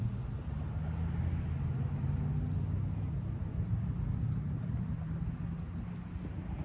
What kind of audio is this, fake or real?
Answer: real